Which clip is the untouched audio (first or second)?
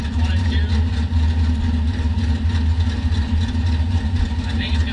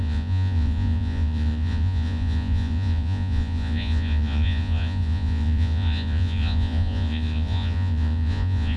first